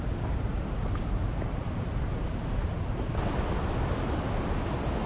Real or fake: real